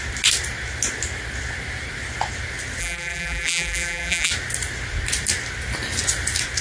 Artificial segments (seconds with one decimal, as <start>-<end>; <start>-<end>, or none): 2.8-4.3